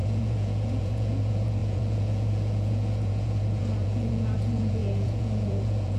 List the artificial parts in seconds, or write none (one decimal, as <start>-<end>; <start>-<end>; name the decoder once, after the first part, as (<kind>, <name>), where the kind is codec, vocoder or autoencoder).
0.0-6.0 (vocoder, Vocos)